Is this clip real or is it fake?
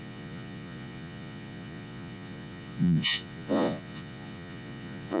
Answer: fake